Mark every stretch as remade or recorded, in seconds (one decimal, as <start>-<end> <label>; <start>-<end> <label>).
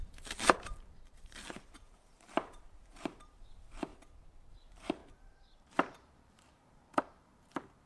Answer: 0.0-3.9 remade; 3.9-4.5 recorded; 4.5-7.9 remade